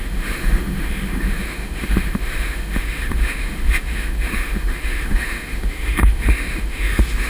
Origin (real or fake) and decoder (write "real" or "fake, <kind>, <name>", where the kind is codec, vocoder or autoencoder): fake, autoencoder, DAC-VAE